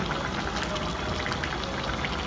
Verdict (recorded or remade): recorded